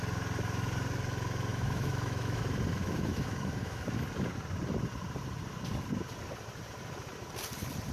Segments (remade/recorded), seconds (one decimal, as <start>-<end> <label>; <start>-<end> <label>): 0.0-1.5 recorded; 1.5-2.4 remade; 2.4-2.8 recorded; 2.8-4.0 remade; 4.0-7.9 recorded